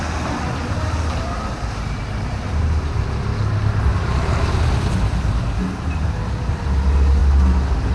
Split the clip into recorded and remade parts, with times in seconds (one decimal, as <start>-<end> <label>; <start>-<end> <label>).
0.0-0.6 recorded; 0.6-3.0 remade; 3.0-3.9 recorded; 3.9-4.5 remade; 4.5-7.9 recorded